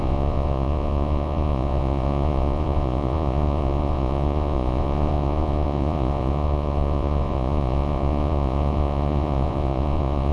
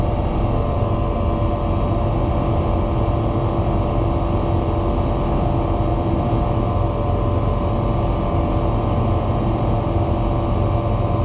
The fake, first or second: first